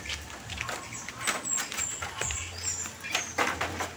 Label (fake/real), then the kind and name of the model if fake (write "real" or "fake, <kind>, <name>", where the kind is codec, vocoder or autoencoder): real